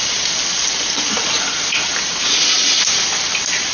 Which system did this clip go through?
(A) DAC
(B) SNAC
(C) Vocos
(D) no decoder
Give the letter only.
D